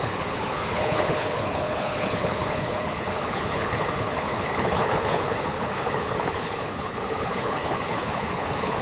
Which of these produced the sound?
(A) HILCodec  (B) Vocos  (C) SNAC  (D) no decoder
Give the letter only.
A